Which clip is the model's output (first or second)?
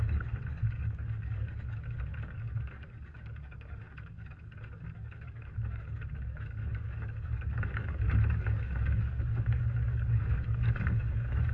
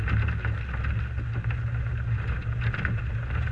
first